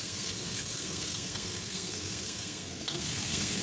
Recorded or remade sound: remade